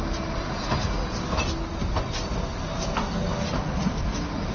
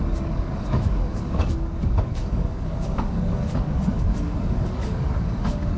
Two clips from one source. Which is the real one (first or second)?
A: first